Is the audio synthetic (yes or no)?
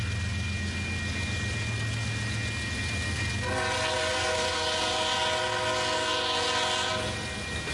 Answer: no